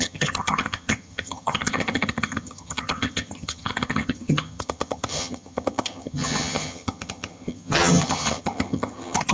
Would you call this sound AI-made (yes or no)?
yes